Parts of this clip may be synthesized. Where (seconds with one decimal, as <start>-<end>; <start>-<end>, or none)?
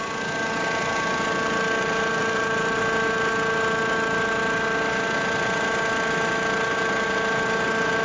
2.2-2.8